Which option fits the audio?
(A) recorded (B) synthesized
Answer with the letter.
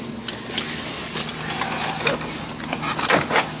A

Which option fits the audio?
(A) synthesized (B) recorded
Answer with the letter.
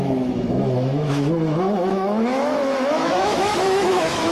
A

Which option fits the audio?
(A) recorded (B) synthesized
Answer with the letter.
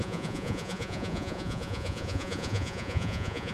B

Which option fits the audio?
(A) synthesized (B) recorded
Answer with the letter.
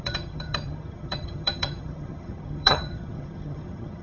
A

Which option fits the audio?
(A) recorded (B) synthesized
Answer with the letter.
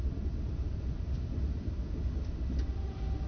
A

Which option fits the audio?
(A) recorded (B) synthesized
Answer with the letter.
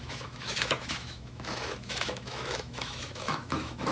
B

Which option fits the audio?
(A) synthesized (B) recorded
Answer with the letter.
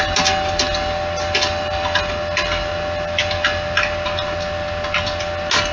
B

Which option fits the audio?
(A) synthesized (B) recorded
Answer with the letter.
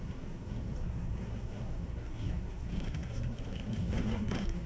A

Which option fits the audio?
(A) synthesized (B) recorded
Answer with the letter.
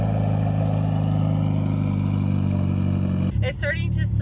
B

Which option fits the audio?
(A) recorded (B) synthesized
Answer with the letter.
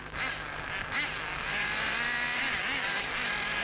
A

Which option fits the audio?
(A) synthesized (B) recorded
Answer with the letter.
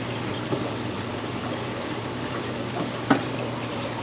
B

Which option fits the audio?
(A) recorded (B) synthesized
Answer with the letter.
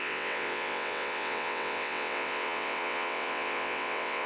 B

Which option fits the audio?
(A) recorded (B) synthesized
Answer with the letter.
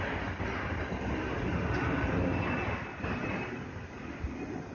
A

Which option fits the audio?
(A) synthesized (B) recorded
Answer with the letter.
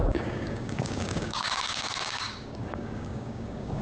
A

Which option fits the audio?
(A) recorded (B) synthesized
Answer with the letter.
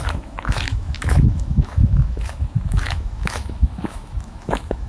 B